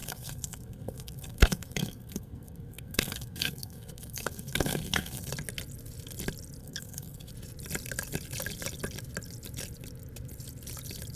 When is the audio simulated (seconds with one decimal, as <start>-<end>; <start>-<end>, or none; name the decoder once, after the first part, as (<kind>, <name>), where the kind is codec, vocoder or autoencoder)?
0.0-5.3 (codec, SNAC); 6.6-7.3